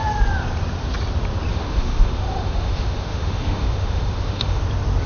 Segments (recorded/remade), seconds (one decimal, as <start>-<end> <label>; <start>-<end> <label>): 0.0-1.5 recorded; 1.5-4.6 remade; 4.6-5.1 recorded